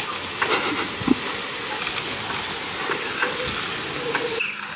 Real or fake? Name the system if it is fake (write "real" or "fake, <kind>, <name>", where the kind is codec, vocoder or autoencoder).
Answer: real